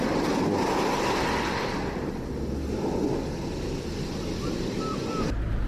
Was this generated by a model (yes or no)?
no